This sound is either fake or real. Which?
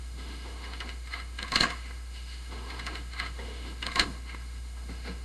fake